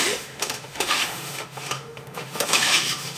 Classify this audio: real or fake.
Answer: fake